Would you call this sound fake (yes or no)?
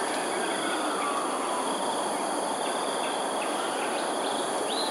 no